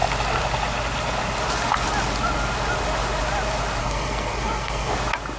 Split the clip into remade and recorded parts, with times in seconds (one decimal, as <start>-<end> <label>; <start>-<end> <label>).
0.0-3.8 recorded; 3.8-4.9 remade; 4.9-5.4 recorded